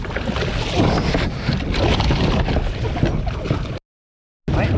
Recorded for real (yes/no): yes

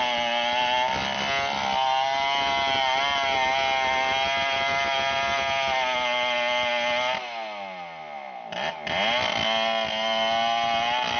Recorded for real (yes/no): yes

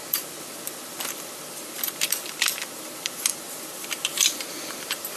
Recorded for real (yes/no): no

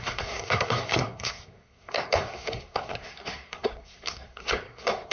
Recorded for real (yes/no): no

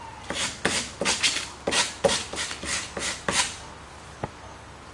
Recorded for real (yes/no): yes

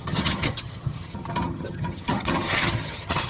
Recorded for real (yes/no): no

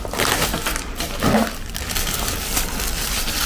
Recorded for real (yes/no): yes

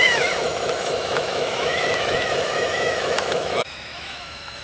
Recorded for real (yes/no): no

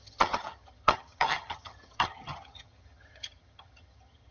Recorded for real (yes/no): no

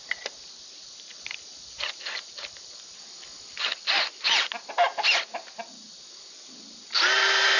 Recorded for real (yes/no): yes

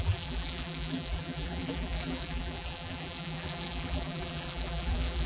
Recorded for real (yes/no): no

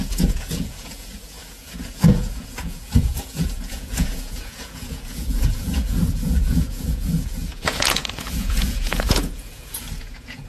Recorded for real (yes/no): no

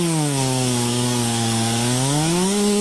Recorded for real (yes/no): no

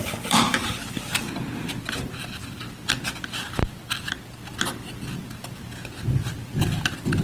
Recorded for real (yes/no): yes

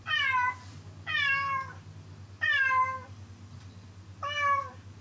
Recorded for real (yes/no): yes